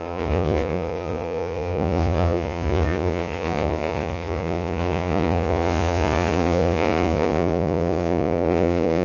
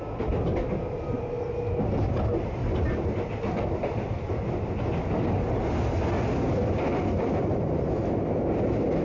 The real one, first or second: second